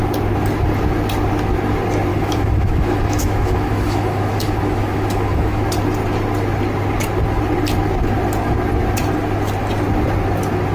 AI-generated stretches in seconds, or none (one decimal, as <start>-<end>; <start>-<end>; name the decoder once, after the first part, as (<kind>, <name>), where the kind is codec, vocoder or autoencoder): 2.1-5.6 (autoencoder, DAC-VAE)